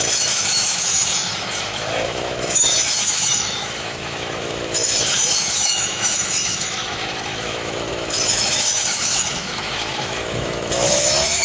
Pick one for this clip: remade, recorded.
remade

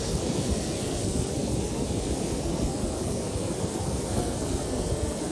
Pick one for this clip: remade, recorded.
remade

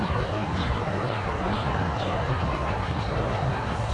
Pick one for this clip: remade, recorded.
remade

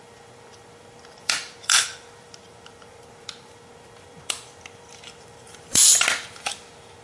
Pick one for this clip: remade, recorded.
remade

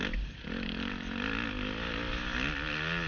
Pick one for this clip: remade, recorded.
recorded